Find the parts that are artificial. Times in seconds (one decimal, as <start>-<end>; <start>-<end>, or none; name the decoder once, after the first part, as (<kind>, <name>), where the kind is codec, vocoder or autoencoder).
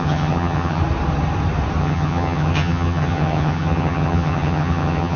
0.0-0.8 (vocoder, HiFi-GAN); 1.8-5.2